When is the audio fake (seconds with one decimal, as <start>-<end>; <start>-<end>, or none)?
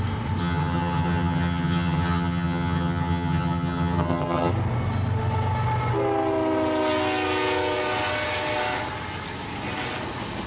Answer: 0.4-4.5